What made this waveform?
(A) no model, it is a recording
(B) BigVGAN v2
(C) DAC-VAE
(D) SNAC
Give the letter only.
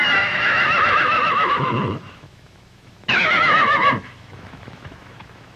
C